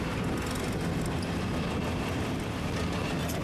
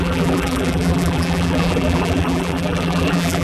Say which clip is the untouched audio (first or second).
first